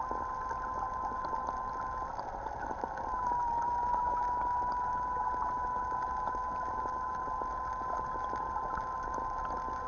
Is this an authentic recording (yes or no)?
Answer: yes